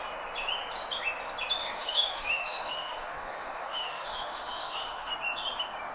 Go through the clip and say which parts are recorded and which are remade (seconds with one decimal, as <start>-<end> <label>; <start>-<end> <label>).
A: 0.0-1.6 recorded; 1.6-5.1 remade; 5.1-5.9 recorded

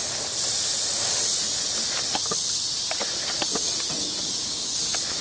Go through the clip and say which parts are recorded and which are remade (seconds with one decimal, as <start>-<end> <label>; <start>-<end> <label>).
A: 0.0-4.0 recorded; 4.0-4.8 remade; 4.8-5.2 recorded